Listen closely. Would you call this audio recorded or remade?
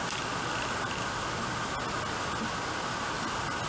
recorded